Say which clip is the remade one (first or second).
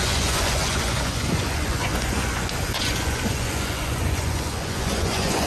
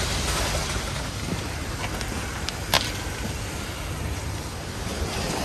first